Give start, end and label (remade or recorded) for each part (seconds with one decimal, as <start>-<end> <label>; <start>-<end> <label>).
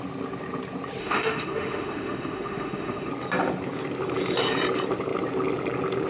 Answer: 0.0-1.0 recorded; 1.0-3.1 remade; 3.1-6.1 recorded